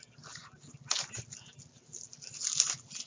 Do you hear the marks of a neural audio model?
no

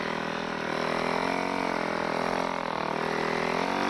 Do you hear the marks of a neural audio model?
no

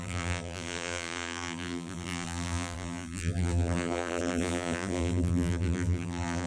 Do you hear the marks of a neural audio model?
yes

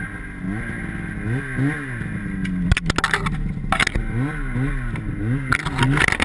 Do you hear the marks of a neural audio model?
no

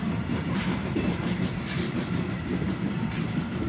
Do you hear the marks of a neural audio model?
yes